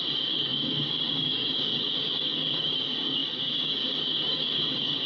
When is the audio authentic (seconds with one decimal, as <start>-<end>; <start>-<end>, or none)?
none